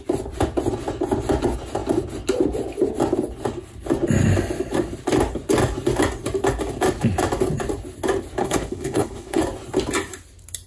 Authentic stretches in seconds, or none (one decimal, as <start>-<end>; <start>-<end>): 0.0-8.4; 9.4-10.7